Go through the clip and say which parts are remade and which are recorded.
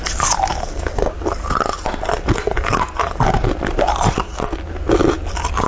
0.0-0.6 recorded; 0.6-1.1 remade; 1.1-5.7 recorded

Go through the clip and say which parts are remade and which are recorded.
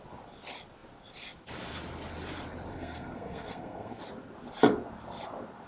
0.0-2.7 recorded; 2.7-4.0 remade; 4.0-5.7 recorded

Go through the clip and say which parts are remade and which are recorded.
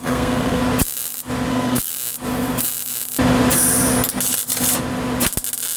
0.0-0.6 remade; 0.6-1.5 recorded; 1.5-1.9 remade; 1.9-5.8 recorded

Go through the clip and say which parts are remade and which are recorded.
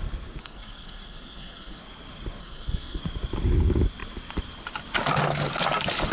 0.0-0.4 recorded; 0.4-1.8 remade; 1.8-2.4 recorded; 2.4-3.0 remade; 3.0-6.1 recorded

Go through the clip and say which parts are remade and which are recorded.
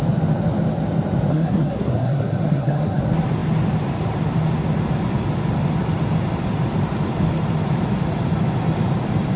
0.0-1.3 recorded; 1.3-3.0 remade; 3.0-9.4 recorded